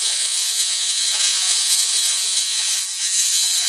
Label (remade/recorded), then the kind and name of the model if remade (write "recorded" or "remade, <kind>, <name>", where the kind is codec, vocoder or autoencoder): remade, vocoder, Vocos